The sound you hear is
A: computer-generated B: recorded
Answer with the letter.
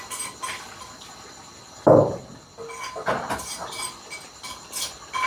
B